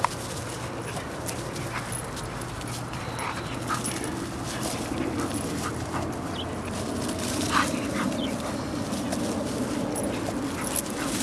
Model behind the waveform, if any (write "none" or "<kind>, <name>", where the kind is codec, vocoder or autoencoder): none